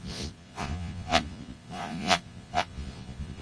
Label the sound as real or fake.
fake